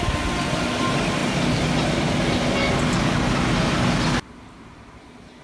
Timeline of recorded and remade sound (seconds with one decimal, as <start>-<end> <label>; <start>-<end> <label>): 0.0-5.4 recorded